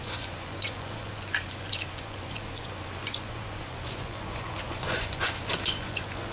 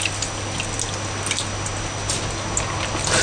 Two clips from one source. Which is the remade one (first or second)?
first